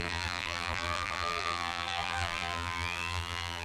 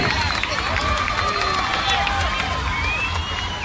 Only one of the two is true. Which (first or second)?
second